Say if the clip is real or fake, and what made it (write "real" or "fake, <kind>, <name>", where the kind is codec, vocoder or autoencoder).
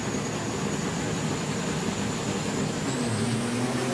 real